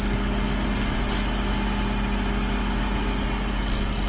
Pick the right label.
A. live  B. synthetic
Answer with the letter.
A